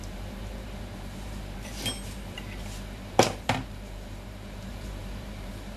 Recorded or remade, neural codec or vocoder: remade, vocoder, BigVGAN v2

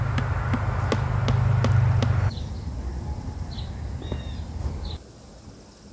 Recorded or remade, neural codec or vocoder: recorded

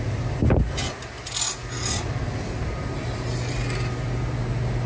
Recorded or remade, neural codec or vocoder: recorded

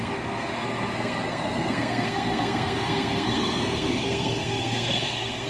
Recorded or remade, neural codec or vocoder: remade, codec, SNAC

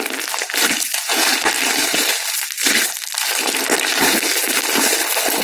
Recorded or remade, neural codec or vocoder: recorded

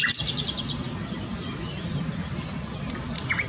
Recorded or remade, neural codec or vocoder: recorded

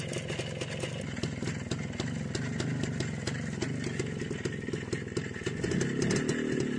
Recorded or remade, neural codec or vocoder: recorded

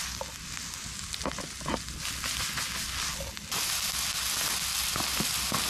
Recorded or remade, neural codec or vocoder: recorded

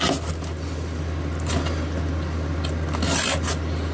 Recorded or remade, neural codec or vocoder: recorded